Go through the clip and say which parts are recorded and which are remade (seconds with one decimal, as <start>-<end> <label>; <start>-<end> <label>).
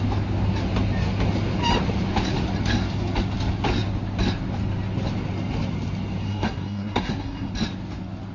0.0-6.2 recorded; 6.2-7.5 remade; 7.5-8.3 recorded